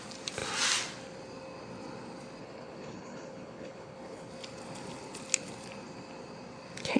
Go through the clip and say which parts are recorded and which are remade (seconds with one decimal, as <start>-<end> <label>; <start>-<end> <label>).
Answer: 0.0-2.4 recorded; 2.4-4.3 remade; 4.3-7.0 recorded